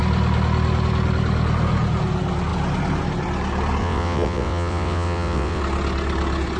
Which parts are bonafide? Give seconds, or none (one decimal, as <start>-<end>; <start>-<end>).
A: 0.0-3.8; 5.6-6.6